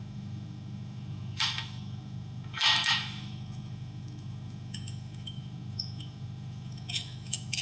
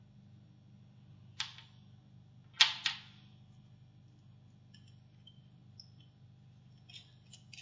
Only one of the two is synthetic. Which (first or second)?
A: first